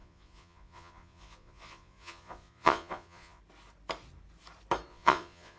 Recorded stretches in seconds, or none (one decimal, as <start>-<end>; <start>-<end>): 3.4-4.9